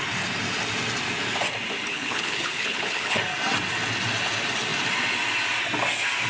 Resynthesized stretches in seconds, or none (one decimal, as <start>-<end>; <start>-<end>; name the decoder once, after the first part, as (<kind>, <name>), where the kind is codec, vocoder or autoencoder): 1.9-3.2 (codec, HILCodec)

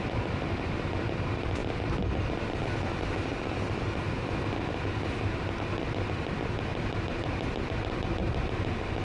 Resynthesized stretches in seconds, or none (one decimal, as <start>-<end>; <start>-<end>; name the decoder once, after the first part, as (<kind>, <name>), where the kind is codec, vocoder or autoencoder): 0.0-1.6 (vocoder, BigVGAN v2); 6.1-9.0

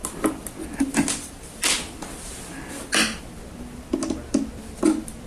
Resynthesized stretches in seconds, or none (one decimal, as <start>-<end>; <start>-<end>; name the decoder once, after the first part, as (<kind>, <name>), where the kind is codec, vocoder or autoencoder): none

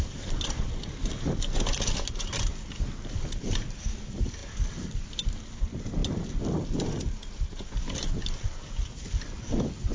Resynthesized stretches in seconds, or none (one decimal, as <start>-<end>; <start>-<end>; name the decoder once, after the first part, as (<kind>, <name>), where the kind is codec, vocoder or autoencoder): none

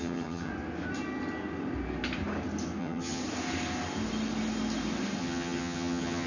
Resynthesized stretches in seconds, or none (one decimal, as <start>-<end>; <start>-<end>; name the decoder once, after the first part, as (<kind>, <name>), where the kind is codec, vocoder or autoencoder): 0.0-0.5 (vocoder, HiFi-GAN); 2.8-3.2; 5.2-6.3

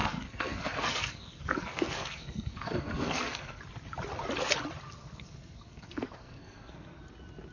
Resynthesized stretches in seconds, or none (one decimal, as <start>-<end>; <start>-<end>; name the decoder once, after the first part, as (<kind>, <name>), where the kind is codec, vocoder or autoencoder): 0.0-3.6 (codec, SNAC); 5.0-7.0

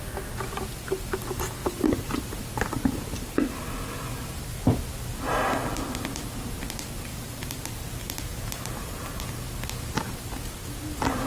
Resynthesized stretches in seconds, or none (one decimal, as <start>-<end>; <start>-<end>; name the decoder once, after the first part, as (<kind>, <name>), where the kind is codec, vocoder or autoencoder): 1.6-2.4 (vocoder, BigVGAN v2); 7.1-9.3

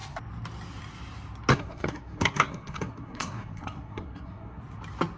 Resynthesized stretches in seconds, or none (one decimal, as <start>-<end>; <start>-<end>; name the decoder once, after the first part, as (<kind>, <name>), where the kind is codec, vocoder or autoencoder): 1.5-4.6 (codec, SNAC)